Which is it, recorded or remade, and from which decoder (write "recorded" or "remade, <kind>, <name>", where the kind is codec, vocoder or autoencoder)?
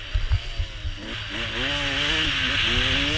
recorded